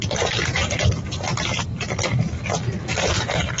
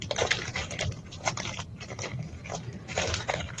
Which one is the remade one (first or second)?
second